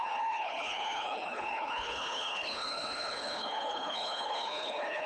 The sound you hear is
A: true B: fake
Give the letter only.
B